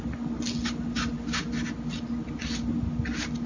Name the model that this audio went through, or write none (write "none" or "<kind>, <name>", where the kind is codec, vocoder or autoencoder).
none